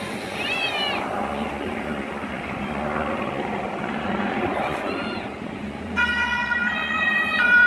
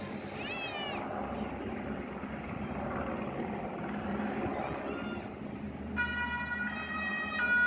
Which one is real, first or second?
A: second